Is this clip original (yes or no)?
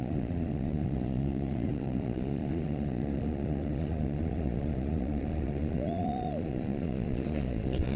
no